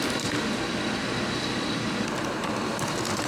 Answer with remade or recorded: recorded